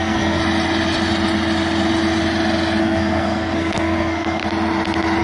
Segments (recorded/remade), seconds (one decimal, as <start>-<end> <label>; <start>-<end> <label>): 0.0-0.4 remade; 0.4-2.8 recorded; 2.8-4.4 remade; 4.4-5.2 recorded